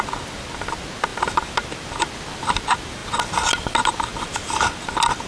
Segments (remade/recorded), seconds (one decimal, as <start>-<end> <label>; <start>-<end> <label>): 0.0-5.3 recorded

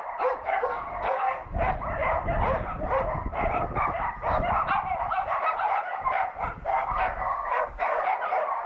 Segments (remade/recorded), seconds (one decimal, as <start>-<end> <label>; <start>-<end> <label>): 0.0-0.5 recorded; 0.5-1.4 remade; 1.4-6.7 recorded; 6.7-8.0 remade; 8.0-8.7 recorded

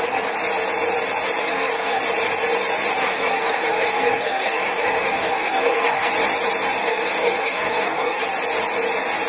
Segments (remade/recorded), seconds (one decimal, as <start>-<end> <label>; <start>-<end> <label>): 0.0-1.4 recorded; 1.4-2.0 remade; 2.0-3.0 recorded; 3.0-6.1 remade; 6.1-6.8 recorded; 6.8-8.2 remade; 8.2-9.3 recorded

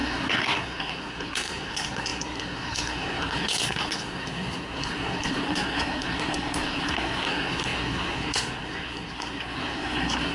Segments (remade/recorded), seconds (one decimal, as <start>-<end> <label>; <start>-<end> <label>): 0.0-10.3 remade

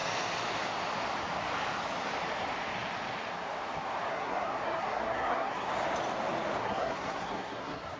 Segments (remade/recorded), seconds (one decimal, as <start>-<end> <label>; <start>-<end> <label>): 0.0-4.1 recorded; 4.1-5.7 remade; 5.7-6.6 recorded; 6.6-8.0 remade

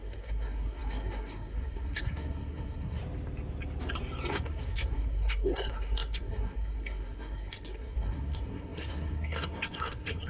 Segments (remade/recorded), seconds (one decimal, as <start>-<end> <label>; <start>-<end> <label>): 0.0-3.0 remade; 3.0-4.3 recorded; 4.3-10.3 remade